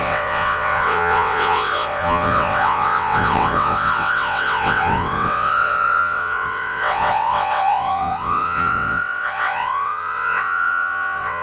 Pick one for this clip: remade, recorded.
remade